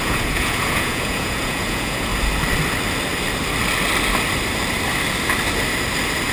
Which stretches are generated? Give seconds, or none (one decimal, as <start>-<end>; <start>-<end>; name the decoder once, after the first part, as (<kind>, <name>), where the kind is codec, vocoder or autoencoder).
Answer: 0.0-2.1 (vocoder, Vocos)